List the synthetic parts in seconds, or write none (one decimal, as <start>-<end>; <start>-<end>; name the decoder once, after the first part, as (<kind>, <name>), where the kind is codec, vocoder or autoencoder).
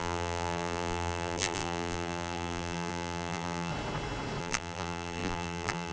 0.0-3.7 (vocoder, BigVGAN v2); 4.4-5.9